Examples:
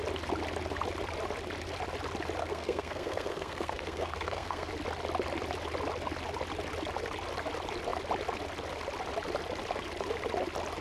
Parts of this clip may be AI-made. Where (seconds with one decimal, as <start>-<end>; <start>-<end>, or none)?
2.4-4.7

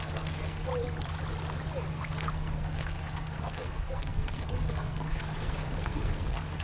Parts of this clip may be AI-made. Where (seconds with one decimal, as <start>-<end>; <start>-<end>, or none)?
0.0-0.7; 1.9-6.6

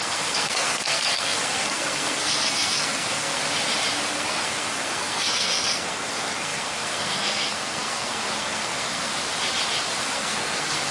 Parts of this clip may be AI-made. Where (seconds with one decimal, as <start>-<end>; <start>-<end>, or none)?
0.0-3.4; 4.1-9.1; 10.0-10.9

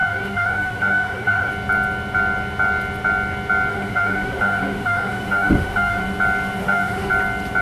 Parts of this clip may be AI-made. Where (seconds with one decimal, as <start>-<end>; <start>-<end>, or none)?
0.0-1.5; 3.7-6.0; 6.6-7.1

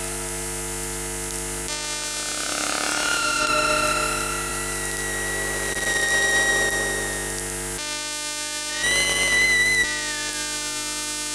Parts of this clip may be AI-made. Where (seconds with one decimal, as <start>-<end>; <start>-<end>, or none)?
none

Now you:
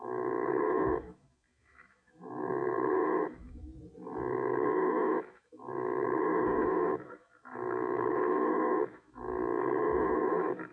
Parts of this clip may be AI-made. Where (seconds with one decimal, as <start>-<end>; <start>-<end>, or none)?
0.0-3.7; 4.3-9.4; 10.2-10.7